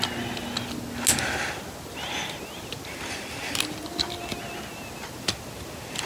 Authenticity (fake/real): real